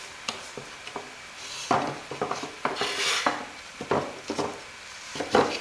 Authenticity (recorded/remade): recorded